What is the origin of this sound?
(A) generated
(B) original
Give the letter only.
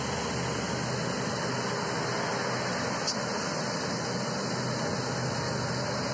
B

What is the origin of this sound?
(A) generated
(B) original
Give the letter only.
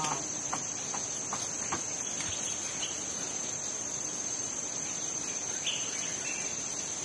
A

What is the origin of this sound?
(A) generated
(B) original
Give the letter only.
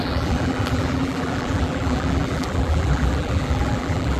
A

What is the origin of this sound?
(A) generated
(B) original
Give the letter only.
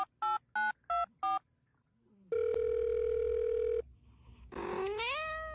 B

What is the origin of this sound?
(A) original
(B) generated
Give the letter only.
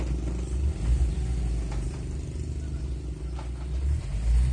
A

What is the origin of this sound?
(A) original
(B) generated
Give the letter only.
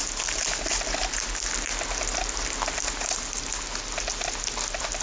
A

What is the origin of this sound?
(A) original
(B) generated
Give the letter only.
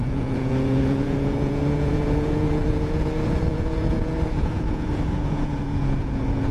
B